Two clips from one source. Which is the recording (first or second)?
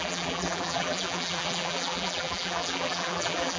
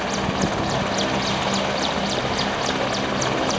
second